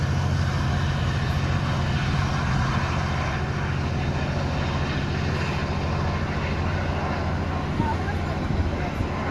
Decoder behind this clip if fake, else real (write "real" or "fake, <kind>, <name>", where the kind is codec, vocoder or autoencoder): real